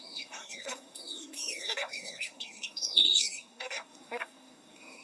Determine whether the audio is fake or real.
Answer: fake